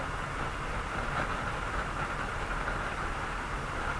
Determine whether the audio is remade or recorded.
recorded